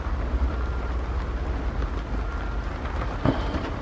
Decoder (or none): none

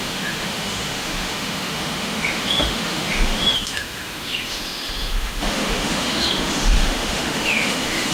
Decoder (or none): autoencoder, DAC-VAE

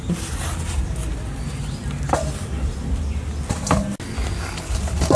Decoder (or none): none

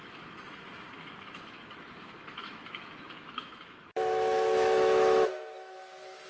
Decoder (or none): autoencoder, DAC-VAE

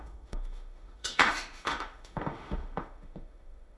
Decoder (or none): autoencoder, DAC-VAE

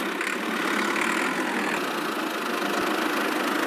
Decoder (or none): none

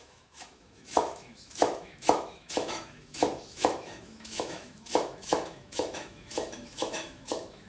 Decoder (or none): autoencoder, DAC-VAE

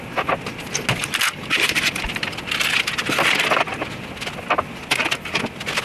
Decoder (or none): none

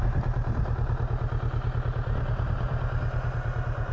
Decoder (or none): none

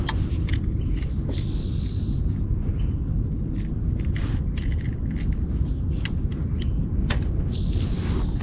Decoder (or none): none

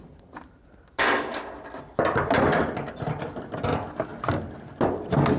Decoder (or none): none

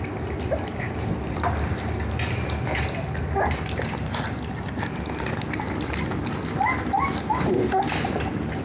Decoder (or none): none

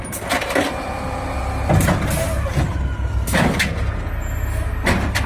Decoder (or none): none